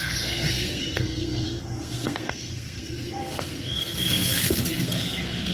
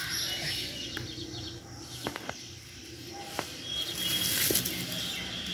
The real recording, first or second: second